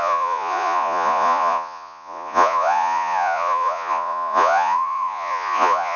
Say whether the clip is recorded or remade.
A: remade